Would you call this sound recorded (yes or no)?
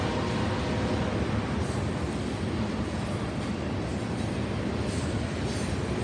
yes